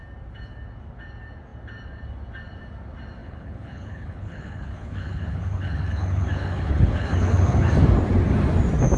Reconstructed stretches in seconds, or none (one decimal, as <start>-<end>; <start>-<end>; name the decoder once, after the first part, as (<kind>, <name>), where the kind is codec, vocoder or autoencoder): 3.2-7.7 (codec, HILCodec)